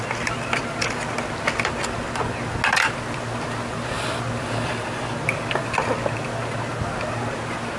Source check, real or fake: real